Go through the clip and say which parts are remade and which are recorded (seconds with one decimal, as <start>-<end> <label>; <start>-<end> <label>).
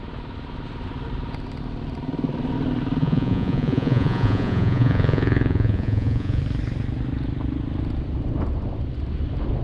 0.0-3.0 recorded; 3.0-6.4 remade; 6.4-9.6 recorded